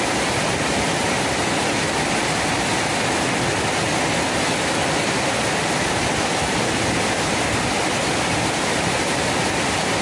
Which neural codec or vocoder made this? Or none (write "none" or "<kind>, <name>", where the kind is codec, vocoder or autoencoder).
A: none